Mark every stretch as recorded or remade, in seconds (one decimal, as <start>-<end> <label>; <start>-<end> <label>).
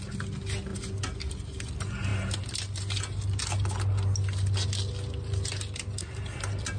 0.0-6.8 recorded